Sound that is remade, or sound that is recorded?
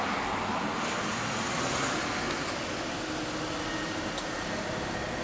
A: recorded